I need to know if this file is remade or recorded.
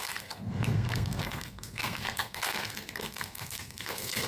remade